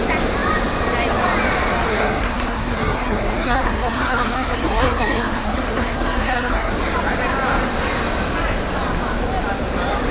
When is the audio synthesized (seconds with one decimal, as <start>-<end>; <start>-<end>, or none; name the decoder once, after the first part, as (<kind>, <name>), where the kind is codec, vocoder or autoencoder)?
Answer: 1.9-6.7 (codec, SNAC)